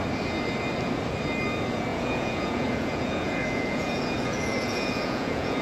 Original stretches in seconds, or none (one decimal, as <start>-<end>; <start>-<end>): 0.0-1.9